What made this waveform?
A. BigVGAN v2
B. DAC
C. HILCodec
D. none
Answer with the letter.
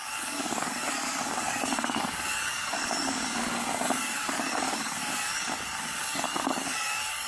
B